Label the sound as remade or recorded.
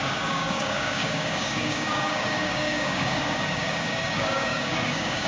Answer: remade